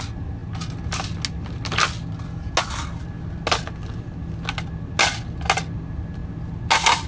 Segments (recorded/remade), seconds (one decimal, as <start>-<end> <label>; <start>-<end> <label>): 0.0-7.1 recorded